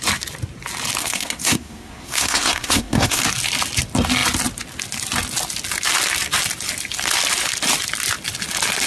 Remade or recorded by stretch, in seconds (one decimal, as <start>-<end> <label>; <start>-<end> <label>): 0.0-1.0 recorded; 1.0-3.2 remade; 3.2-8.9 recorded